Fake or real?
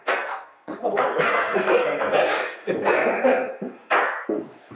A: fake